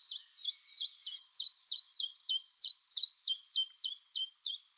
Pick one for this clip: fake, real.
fake